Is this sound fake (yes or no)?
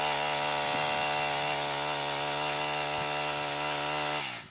no